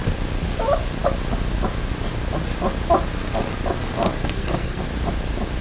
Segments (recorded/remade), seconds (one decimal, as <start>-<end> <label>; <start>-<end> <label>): 0.0-4.2 recorded; 4.2-4.8 remade; 4.8-5.6 recorded